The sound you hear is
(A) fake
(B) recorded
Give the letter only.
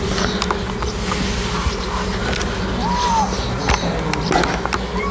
B